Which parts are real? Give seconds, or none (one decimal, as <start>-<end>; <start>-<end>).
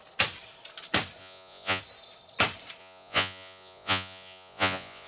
0.0-1.2; 1.8-2.8